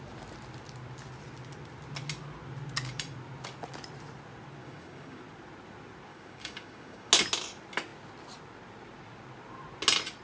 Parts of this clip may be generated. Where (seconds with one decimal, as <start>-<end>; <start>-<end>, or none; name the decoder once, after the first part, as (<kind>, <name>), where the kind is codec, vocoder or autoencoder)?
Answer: 4.6-5.2 (codec, DAC); 6.1-7.1